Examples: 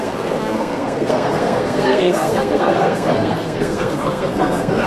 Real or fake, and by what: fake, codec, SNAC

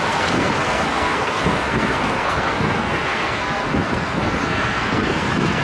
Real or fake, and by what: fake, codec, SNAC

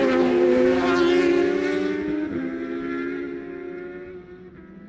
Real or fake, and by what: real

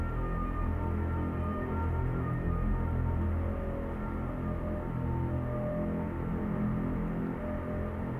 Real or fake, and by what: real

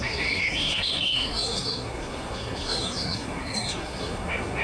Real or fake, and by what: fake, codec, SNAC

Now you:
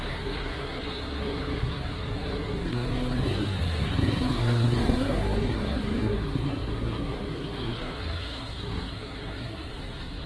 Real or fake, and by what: fake, codec, SNAC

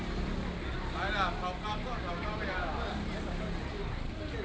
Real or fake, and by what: real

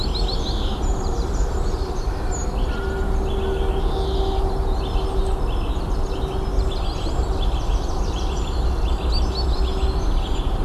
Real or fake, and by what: real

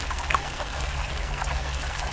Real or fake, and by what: fake, codec, SNAC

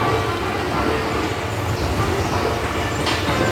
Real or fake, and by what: real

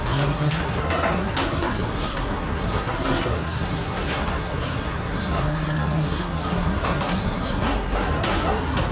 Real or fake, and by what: fake, codec, SNAC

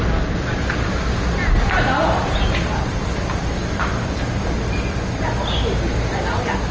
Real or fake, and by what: real